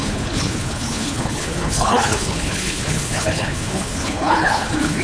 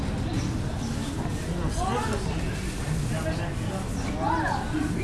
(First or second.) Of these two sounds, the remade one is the first